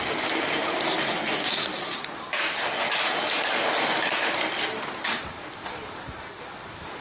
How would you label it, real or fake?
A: real